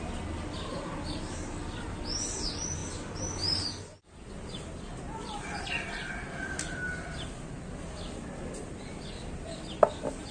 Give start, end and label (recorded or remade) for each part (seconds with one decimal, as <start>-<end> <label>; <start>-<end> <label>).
0.0-10.3 recorded